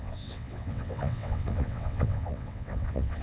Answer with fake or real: fake